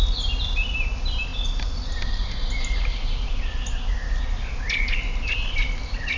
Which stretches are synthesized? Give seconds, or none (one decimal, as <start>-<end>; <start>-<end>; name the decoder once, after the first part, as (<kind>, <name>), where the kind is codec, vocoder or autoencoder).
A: none